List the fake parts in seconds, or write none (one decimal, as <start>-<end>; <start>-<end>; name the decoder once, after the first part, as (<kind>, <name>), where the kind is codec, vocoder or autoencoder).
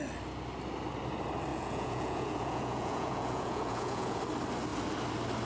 1.5-4.2 (vocoder, Vocos)